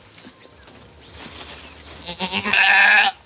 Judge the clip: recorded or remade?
recorded